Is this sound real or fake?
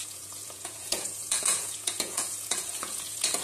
fake